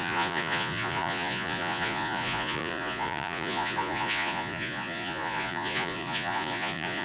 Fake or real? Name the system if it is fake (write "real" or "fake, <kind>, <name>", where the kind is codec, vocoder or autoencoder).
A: fake, vocoder, Vocos